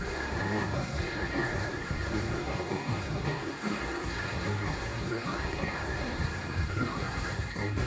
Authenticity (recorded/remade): remade